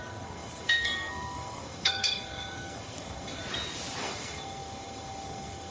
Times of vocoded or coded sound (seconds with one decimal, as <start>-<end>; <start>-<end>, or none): 0.0-3.4; 4.0-5.7